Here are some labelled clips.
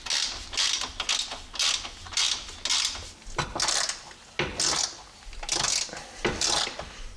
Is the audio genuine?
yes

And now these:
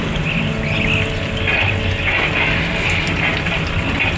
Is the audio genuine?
yes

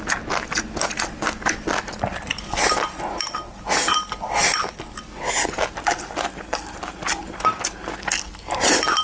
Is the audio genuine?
yes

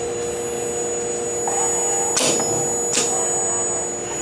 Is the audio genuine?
yes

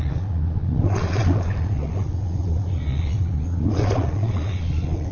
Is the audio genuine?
no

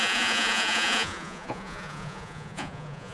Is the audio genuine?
no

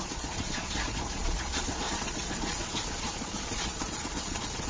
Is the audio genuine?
no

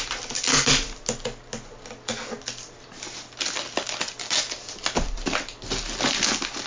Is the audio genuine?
yes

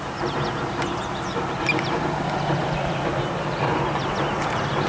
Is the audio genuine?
yes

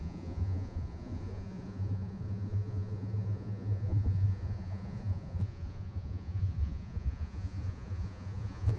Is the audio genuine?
no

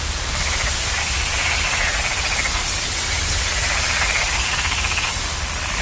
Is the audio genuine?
yes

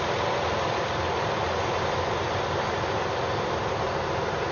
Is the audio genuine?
yes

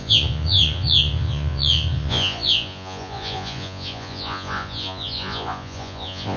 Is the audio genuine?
no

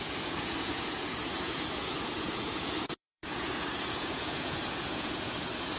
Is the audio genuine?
no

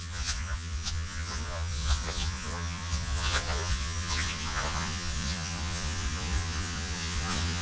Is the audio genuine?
no